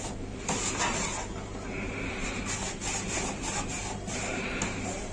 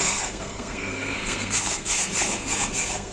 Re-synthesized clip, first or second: second